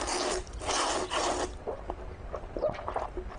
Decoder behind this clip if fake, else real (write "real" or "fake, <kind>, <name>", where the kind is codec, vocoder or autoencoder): real